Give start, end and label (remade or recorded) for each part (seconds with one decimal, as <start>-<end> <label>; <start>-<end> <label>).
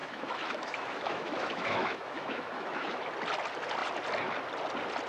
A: 0.0-3.1 remade; 3.1-5.1 recorded